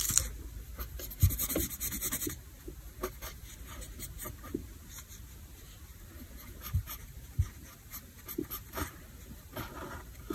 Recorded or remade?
remade